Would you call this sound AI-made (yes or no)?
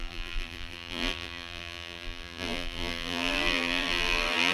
yes